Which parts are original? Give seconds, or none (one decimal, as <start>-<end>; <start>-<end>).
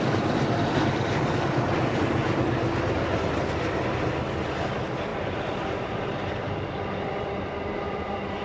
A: 0.0-8.4